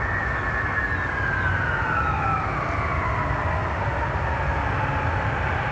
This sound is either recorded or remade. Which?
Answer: recorded